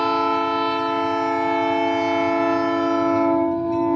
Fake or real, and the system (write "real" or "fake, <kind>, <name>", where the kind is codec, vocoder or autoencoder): real